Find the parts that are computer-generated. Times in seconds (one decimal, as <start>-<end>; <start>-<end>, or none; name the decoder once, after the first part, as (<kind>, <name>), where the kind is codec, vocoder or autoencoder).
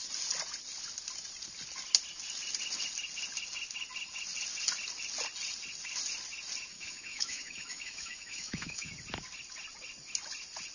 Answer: 6.7-8.9 (autoencoder, DAC-VAE)